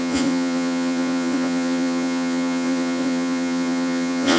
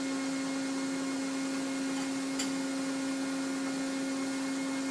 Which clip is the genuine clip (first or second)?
second